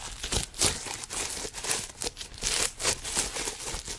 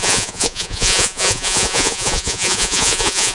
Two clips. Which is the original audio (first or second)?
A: first